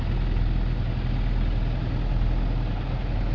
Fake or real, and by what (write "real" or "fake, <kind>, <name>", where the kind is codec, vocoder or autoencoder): real